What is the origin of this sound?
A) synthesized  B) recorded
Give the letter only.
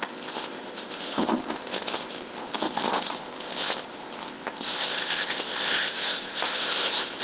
A